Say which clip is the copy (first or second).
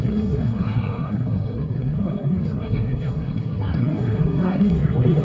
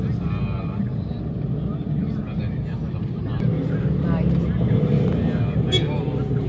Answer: first